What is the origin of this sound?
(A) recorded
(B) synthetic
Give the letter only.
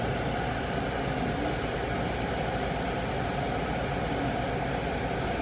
A